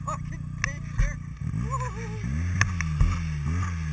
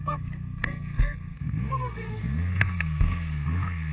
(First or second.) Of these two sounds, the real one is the first